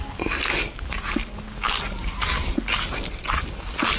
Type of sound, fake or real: real